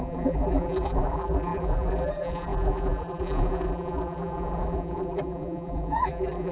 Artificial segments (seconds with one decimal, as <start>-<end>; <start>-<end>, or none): 0.0-6.5